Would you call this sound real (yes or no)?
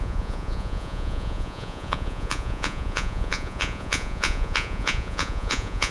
no